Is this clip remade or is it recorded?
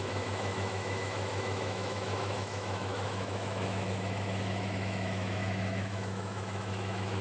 remade